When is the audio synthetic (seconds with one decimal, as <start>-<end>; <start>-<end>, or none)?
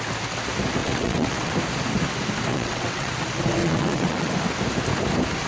0.8-1.5; 2.5-3.1; 3.6-4.3